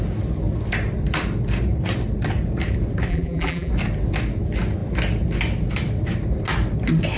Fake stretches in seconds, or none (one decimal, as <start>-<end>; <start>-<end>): 3.1-3.7